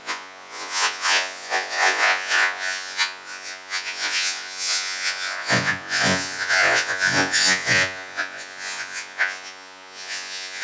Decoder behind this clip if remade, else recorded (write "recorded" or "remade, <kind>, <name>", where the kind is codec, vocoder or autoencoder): remade, vocoder, Vocos